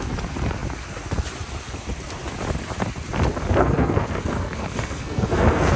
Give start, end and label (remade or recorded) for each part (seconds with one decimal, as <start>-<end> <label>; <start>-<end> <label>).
0.0-3.6 recorded; 3.6-5.8 remade